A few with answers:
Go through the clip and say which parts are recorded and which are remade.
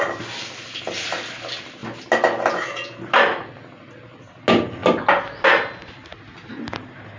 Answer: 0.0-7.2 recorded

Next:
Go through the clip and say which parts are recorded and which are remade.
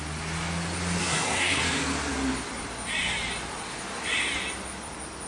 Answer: 0.0-1.0 recorded; 1.0-1.6 remade; 1.6-5.3 recorded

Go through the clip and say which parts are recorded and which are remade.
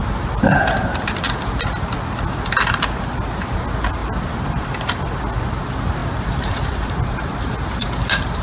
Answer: 0.0-4.0 recorded; 4.0-5.5 remade; 5.5-6.0 recorded; 6.0-6.9 remade; 6.9-8.4 recorded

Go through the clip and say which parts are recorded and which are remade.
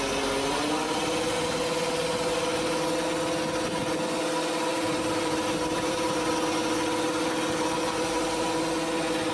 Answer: 0.0-4.7 recorded; 4.7-6.3 remade; 6.3-9.3 recorded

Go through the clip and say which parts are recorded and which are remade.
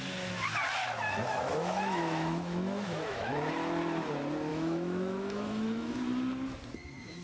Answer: 0.0-0.8 recorded; 0.8-3.5 remade; 3.5-4.5 recorded; 4.5-6.0 remade; 6.0-7.2 recorded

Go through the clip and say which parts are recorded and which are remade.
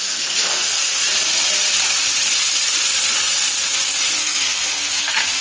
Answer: 0.0-1.0 remade; 1.0-4.2 recorded; 4.2-5.4 remade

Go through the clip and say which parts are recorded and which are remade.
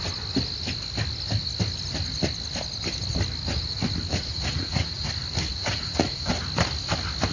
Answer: 0.0-4.1 recorded; 4.1-5.1 remade; 5.1-5.5 recorded; 5.5-6.3 remade; 6.3-7.3 recorded